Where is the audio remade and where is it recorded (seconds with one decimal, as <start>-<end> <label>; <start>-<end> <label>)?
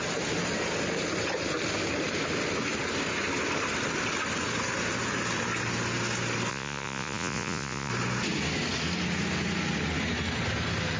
0.0-6.5 recorded; 6.5-7.9 remade; 7.9-11.0 recorded